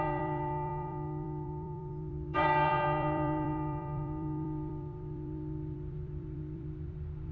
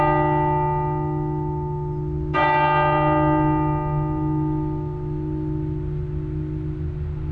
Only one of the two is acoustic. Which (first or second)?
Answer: second